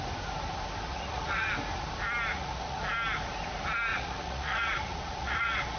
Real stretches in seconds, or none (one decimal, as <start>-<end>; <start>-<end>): 0.0-0.9; 1.5-2.3; 2.8-3.9